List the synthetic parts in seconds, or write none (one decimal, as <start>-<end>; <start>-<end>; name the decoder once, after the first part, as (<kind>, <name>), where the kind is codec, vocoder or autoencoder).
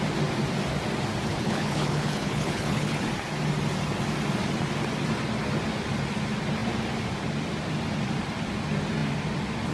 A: 1.3-3.0 (codec, HILCodec)